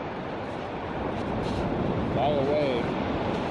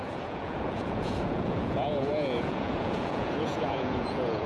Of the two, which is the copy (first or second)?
second